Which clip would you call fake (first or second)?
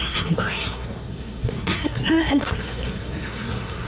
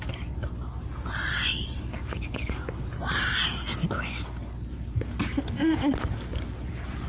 first